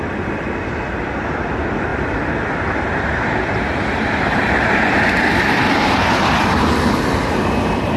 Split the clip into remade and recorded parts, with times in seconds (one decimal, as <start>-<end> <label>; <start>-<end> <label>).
0.0-1.9 recorded; 1.9-6.7 remade; 6.7-8.0 recorded